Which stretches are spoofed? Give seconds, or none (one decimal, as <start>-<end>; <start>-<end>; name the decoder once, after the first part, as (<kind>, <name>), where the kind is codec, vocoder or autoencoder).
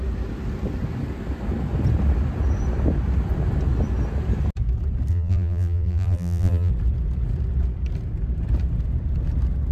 5.1-6.7 (vocoder, BigVGAN v2)